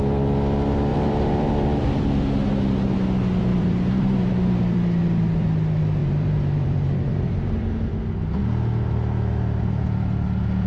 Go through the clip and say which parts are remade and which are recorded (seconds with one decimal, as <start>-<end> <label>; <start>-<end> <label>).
0.0-0.9 recorded; 0.9-2.0 remade; 2.0-3.5 recorded; 3.5-4.2 remade; 4.2-6.0 recorded; 6.0-7.9 remade; 7.9-10.7 recorded